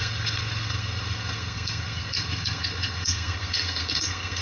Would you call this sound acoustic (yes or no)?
no